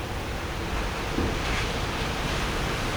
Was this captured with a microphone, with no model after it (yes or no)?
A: yes